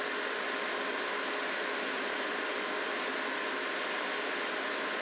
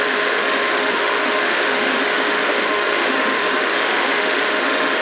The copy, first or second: second